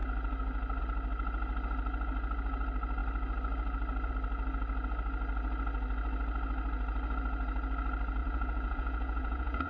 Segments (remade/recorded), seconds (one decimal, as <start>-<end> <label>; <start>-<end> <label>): 0.0-8.2 recorded; 8.2-9.7 remade